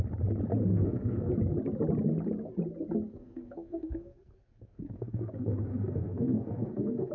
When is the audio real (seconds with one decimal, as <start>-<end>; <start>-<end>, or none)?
0.0-0.7; 1.3-3.2

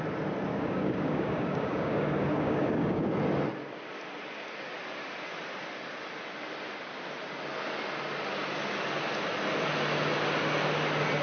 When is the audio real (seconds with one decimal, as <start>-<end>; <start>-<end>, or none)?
0.0-0.5; 3.0-11.2

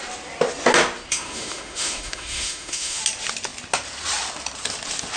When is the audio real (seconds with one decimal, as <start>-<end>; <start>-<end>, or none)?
0.0-1.1; 3.0-5.2

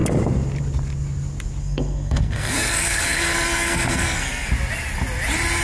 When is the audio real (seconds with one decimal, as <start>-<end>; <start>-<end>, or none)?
0.0-1.6; 4.5-5.6

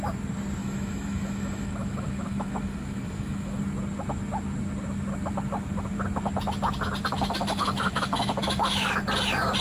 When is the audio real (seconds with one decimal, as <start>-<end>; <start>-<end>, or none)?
0.0-0.6; 3.6-7.4; 9.0-9.6

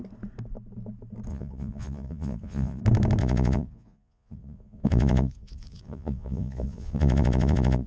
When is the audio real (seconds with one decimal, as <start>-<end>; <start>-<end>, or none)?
0.0-1.3; 2.8-3.2